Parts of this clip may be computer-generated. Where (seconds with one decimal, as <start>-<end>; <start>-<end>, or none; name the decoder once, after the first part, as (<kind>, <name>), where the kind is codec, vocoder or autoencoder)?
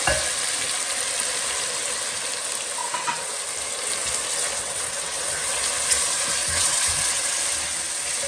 2.8-3.4 (vocoder, WaveNeXt); 4.6-5.6; 6.4-7.4